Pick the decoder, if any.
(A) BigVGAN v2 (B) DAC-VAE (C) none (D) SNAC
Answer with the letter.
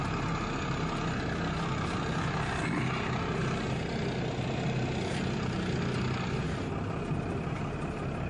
C